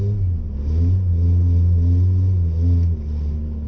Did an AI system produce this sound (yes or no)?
no